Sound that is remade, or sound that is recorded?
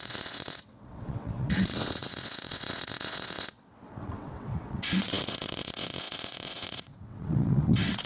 remade